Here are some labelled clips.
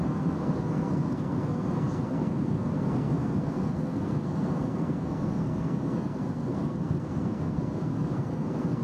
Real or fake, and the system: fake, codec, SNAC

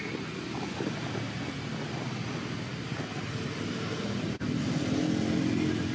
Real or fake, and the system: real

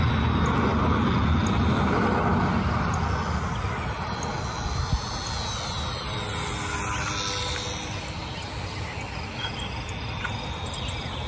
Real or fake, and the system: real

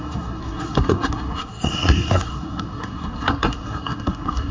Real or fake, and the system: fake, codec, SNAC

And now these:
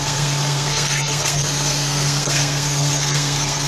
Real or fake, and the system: fake, codec, SNAC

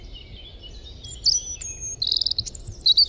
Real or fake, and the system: real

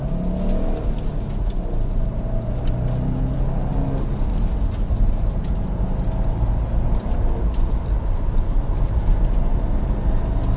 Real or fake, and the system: real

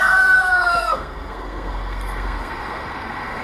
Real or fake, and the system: fake, codec, SNAC